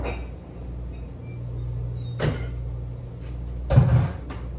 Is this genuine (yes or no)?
yes